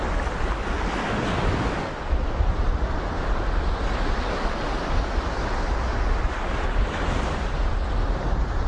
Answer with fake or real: real